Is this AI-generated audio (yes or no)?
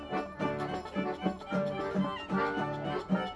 no